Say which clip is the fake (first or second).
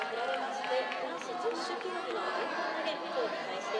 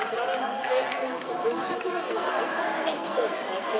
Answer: second